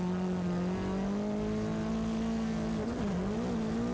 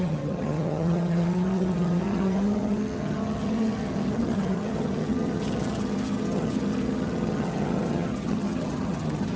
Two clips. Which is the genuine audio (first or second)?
first